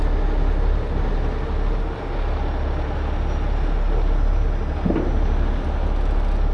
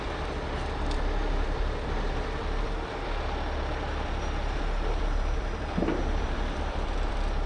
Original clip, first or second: first